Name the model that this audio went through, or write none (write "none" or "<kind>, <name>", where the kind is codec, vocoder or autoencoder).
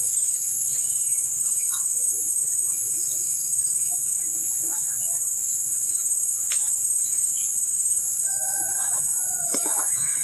autoencoder, DAC-VAE